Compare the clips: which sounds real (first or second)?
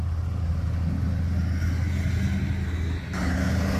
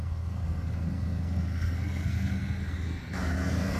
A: first